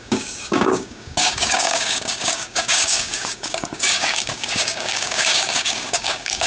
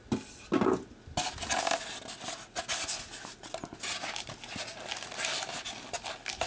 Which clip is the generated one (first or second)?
first